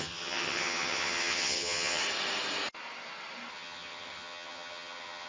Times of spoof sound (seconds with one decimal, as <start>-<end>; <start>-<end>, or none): 0.0-2.0; 3.5-5.3